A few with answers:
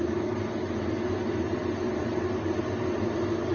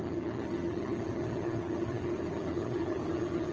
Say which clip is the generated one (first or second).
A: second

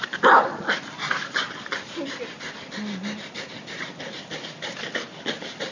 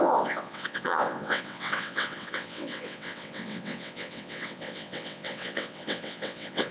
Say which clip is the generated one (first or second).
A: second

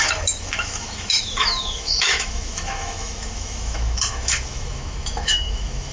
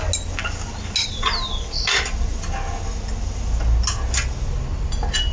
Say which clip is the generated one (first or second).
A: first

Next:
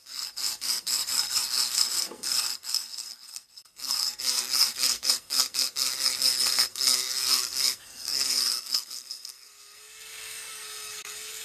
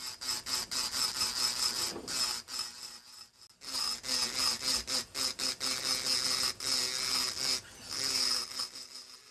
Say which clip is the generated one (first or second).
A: first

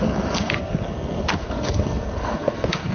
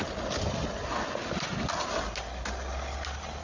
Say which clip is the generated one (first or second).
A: first